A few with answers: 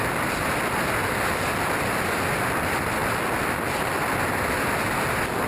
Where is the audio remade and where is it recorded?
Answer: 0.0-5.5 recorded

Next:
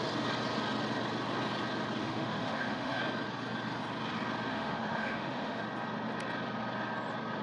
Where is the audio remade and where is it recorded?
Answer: 0.0-2.0 recorded; 2.0-3.0 remade; 3.0-4.5 recorded; 4.5-5.6 remade; 5.6-7.4 recorded